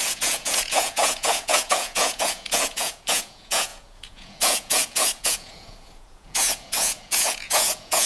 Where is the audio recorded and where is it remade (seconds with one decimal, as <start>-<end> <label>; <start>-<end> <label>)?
0.0-8.1 remade